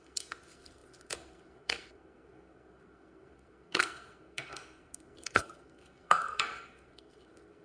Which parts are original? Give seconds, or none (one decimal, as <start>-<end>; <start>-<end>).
none